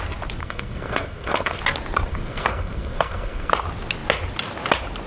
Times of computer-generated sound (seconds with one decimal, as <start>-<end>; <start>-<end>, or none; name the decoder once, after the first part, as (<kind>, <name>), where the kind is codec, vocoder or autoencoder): 0.4-1.6 (codec, SNAC); 2.1-3.5